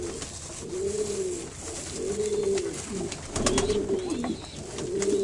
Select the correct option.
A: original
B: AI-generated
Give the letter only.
A